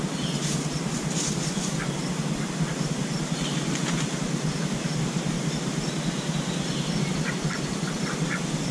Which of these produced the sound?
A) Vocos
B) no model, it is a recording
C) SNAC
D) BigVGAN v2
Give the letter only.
B